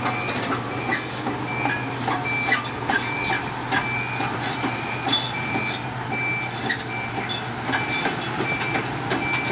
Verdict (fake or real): real